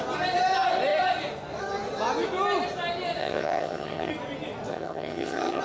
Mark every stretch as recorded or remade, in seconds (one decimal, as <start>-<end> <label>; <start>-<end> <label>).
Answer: 0.0-3.2 recorded; 3.2-4.1 remade; 4.1-4.7 recorded; 4.7-5.6 remade